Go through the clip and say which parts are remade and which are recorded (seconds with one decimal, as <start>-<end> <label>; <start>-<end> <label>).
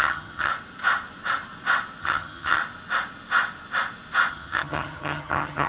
0.0-0.5 remade; 0.5-2.0 recorded; 2.0-2.6 remade; 2.6-4.3 recorded; 4.3-5.7 remade